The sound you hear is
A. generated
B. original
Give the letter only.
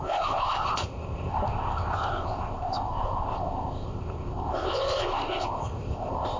A